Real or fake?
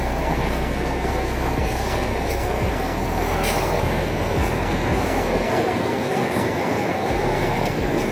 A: fake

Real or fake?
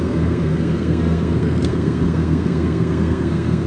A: fake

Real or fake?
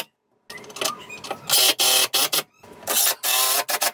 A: real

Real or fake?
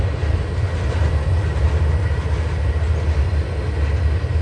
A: real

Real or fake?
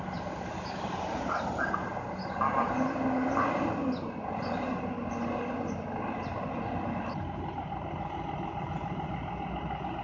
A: real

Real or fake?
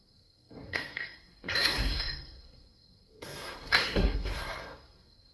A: fake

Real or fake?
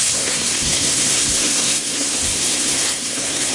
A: fake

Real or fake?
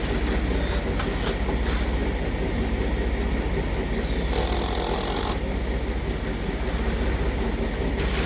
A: real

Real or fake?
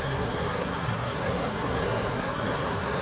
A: fake